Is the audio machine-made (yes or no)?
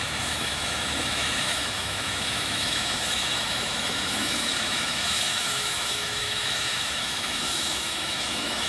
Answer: yes